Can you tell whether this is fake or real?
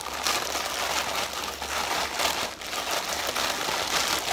real